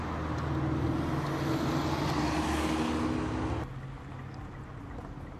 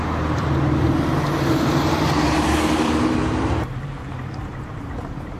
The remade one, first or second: second